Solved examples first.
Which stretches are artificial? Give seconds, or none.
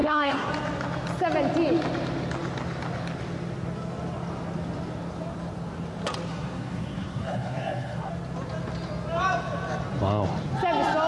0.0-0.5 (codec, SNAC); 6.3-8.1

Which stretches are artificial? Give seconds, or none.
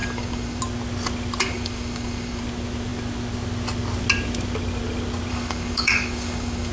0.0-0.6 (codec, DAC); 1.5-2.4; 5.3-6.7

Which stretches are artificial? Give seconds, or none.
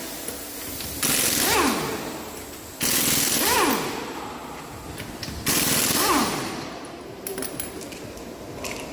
6.0-8.4 (vocoder, BigVGAN v2)